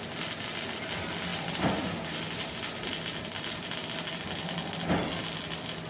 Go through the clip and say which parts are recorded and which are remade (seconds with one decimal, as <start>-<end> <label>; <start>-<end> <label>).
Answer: 0.0-5.9 recorded